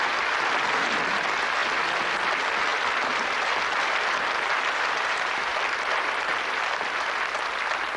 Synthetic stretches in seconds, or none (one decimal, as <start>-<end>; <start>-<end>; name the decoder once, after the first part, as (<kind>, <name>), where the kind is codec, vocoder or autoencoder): 1.6-2.1 (vocoder, BigVGAN v2); 2.7-3.5; 5.5-6.8